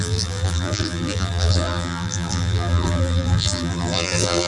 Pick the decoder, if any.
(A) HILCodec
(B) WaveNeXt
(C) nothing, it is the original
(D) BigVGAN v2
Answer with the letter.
D